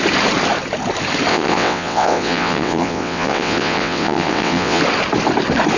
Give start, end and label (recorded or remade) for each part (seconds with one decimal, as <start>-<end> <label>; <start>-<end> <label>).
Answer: 0.0-1.3 recorded; 1.3-4.8 remade; 4.8-5.8 recorded